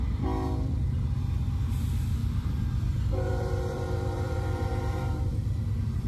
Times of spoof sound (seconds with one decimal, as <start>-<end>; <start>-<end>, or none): 2.2-6.1